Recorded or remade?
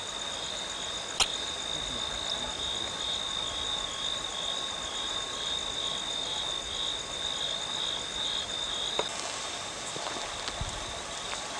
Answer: recorded